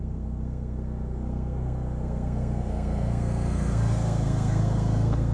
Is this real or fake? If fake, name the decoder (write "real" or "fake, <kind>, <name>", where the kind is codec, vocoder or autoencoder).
fake, codec, SNAC